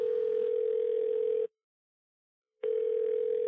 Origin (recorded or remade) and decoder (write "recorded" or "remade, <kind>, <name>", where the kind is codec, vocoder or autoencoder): remade, codec, SNAC